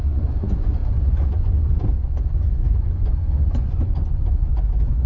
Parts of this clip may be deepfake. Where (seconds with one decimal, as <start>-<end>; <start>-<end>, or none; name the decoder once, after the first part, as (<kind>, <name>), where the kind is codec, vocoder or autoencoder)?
0.0-5.1 (vocoder, Vocos)